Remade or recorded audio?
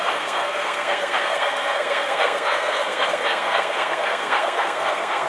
remade